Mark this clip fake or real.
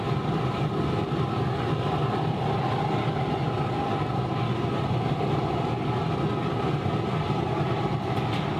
real